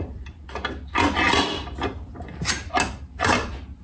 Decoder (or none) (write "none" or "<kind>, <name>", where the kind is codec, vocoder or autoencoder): none